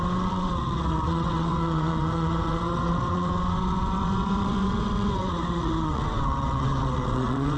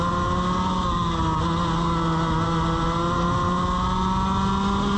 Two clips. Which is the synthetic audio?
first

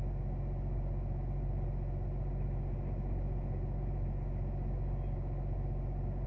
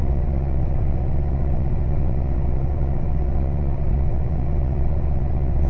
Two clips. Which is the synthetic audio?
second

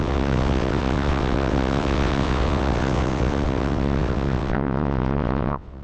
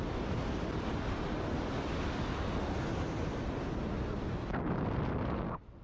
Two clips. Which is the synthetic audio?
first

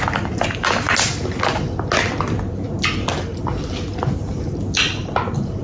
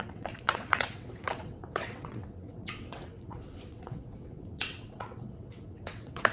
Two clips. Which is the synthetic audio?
second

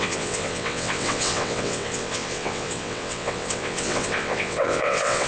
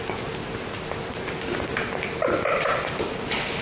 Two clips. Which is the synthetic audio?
first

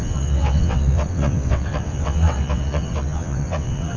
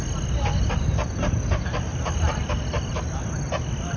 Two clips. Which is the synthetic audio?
first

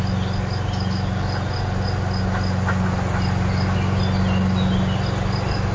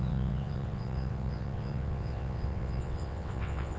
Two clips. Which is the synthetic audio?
second